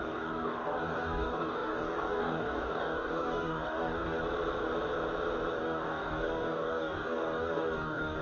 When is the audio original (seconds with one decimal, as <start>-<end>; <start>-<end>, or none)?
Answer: 4.2-5.5